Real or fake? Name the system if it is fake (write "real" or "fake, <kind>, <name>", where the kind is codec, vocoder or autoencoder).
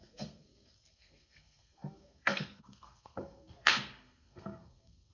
fake, codec, SNAC